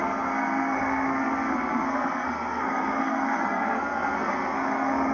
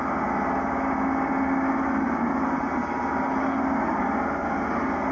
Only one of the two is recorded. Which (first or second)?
second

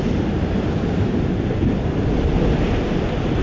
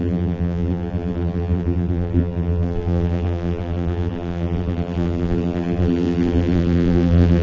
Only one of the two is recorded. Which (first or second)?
first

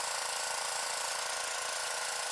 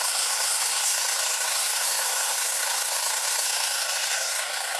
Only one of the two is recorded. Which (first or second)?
first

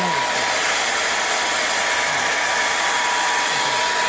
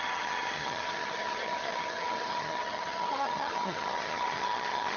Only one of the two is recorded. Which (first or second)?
first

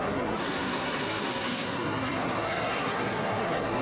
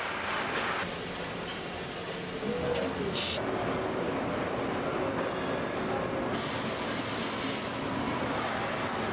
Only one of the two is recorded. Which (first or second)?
second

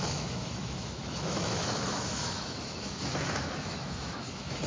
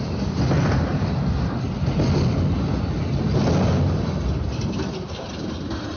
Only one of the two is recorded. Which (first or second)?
second